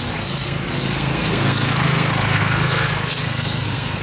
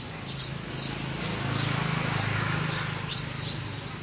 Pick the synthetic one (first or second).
first